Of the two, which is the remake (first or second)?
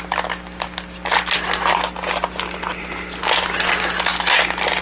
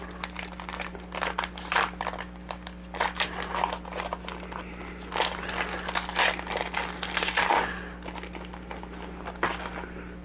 second